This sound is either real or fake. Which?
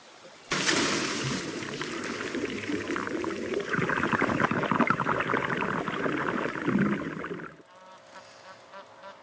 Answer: real